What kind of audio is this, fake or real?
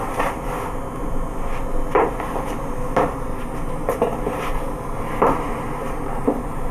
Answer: real